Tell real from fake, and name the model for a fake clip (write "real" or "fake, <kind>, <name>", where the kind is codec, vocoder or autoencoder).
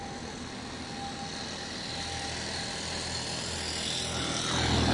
real